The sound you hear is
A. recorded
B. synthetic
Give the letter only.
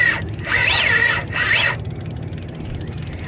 A